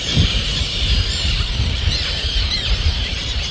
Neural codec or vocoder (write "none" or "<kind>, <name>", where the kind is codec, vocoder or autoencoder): vocoder, BigVGAN v2